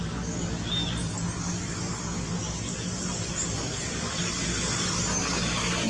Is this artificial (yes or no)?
no